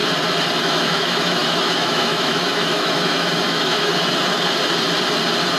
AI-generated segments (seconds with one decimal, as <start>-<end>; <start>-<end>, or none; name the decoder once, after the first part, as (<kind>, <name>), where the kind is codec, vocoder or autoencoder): 0.6-3.9 (autoencoder, DAC-VAE)